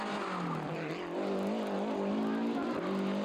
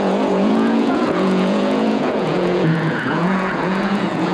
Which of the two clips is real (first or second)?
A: first